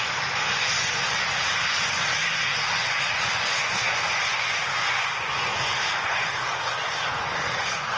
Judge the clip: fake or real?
fake